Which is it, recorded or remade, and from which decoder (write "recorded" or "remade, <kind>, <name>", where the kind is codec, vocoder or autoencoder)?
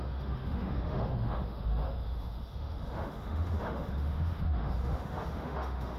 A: remade, autoencoder, DAC-VAE